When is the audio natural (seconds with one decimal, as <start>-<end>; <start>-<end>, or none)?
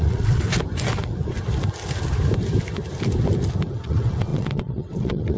0.5-3.7